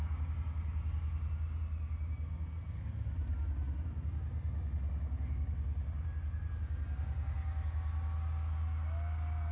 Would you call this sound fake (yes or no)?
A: no